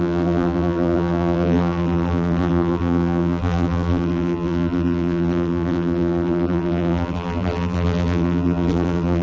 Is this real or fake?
fake